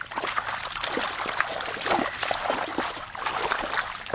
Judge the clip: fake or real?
real